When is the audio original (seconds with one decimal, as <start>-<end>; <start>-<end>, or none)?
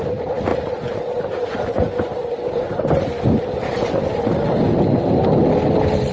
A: 0.0-6.1